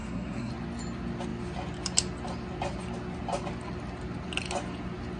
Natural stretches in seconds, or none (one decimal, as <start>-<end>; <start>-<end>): 0.5-5.2